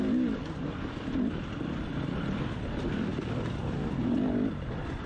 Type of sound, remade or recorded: recorded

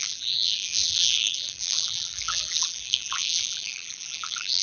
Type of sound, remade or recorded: remade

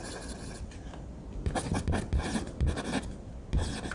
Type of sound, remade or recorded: recorded